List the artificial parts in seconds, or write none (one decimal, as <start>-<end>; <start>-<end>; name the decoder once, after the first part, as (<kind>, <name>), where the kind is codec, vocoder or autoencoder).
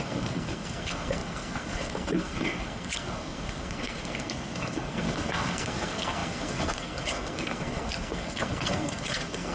0.0-9.5 (codec, SNAC)